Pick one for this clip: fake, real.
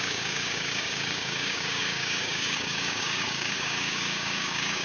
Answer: fake